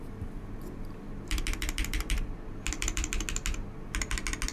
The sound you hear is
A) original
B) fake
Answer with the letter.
A